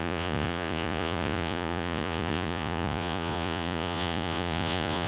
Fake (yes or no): yes